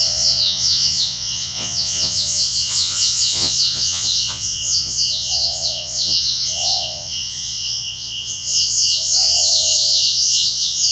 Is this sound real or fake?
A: fake